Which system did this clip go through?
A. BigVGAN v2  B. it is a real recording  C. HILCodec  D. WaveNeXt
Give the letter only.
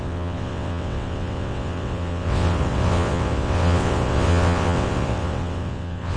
D